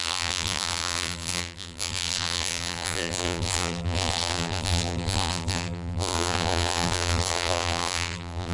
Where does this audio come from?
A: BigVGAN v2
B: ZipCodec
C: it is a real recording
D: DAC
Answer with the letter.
A